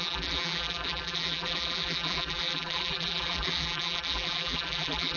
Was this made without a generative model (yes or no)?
no